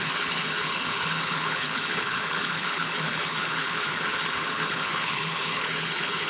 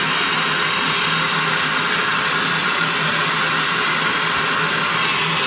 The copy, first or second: first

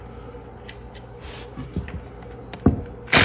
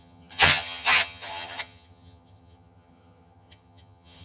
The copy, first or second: second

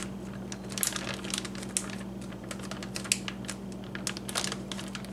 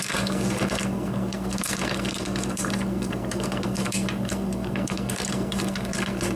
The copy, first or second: second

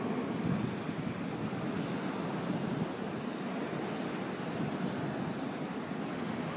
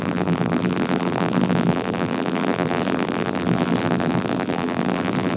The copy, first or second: second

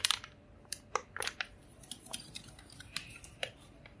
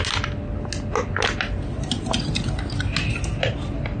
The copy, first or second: first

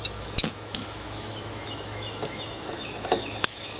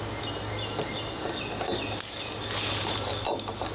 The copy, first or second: first